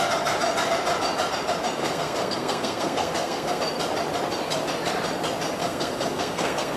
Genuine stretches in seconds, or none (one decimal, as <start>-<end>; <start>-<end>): 0.0-1.8; 3.6-5.6